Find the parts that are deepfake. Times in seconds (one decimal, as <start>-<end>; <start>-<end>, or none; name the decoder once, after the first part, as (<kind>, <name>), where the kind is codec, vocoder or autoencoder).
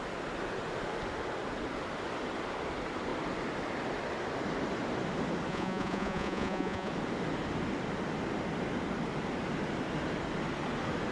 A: 5.5-6.9 (vocoder, Vocos)